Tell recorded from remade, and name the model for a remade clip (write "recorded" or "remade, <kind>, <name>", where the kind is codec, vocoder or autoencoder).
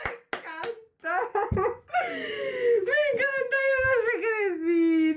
recorded